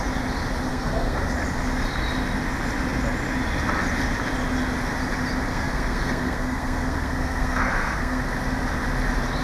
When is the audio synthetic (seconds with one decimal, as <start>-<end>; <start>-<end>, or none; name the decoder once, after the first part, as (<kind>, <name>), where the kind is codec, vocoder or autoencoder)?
0.7-1.2 (codec, SNAC); 5.5-8.2